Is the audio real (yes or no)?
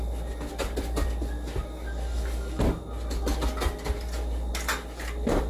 yes